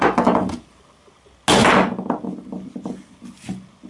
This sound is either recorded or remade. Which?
recorded